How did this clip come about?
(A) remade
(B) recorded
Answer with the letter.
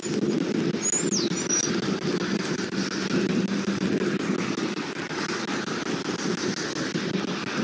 B